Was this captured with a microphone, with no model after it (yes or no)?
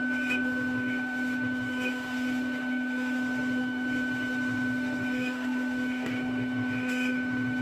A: no